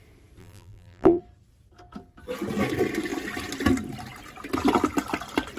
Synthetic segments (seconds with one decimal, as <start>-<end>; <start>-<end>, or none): 0.4-1.2